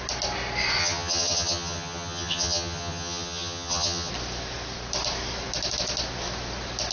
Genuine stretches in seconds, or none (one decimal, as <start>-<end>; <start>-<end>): 0.0-0.8; 4.1-6.9